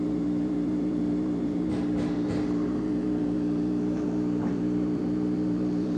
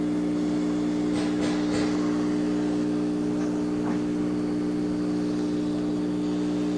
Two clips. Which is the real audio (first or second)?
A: second